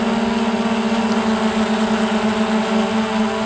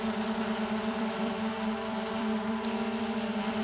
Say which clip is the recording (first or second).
first